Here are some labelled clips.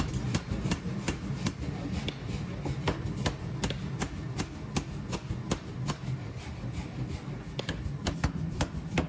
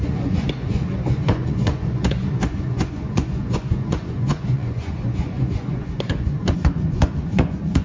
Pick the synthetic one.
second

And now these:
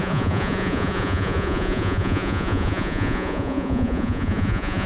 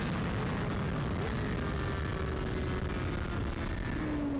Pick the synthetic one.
first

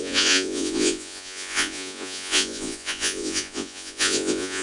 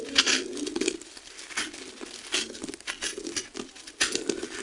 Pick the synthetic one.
first